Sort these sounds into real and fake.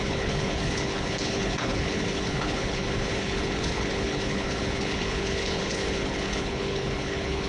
fake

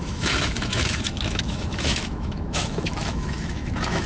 fake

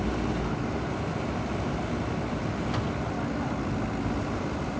real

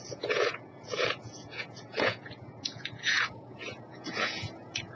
fake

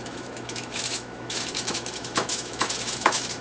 fake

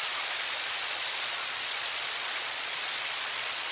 fake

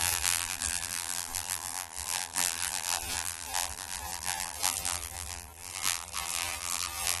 fake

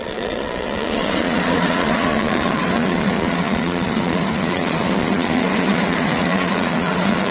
fake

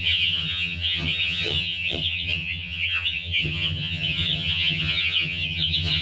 fake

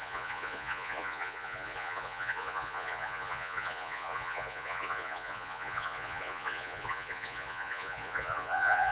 fake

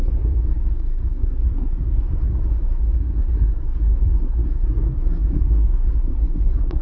fake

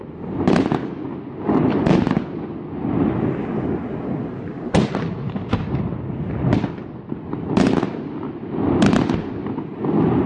real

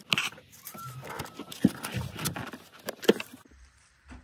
real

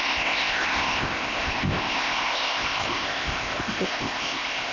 fake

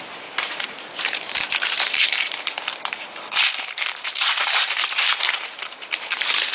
fake